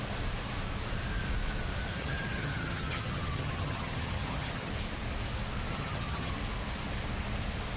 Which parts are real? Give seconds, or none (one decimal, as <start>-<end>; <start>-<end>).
0.0-2.0; 4.7-5.7; 6.3-7.8